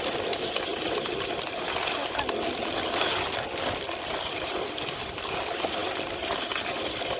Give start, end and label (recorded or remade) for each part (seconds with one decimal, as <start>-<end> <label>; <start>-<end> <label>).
0.0-7.2 recorded